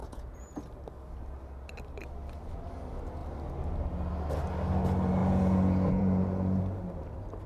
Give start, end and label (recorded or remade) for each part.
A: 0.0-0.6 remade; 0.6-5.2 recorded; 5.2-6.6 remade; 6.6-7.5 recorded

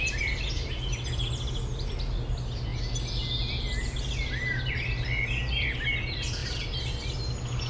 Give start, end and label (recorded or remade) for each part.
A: 0.0-7.7 recorded

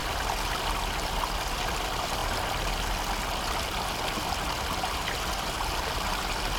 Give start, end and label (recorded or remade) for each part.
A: 0.0-6.6 recorded

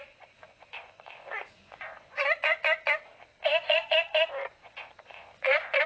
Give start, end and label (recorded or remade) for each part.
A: 0.0-2.2 remade; 2.2-3.5 recorded; 3.5-3.9 remade; 3.9-4.5 recorded; 4.5-5.9 remade

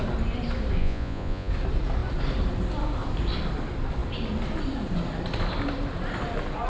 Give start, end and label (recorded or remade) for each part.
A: 0.0-0.8 recorded; 0.8-1.5 remade; 1.5-6.7 recorded